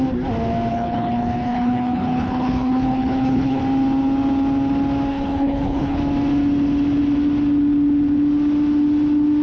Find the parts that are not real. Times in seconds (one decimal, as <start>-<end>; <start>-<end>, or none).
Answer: 0.7-3.6; 5.1-6.0